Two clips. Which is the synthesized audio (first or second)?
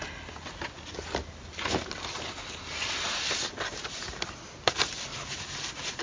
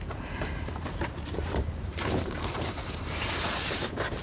second